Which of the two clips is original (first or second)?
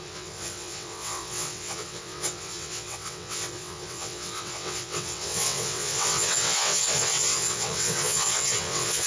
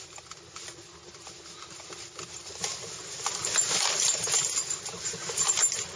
second